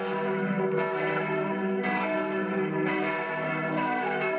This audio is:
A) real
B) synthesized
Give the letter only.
B